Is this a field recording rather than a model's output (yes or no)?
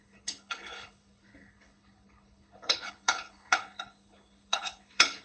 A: no